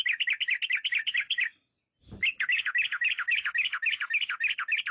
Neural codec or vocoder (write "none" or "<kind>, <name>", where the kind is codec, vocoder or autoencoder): none